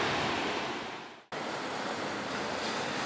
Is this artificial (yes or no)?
no